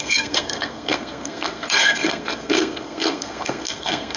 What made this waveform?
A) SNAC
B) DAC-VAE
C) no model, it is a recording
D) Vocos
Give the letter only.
A